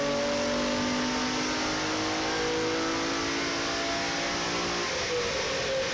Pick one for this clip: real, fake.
real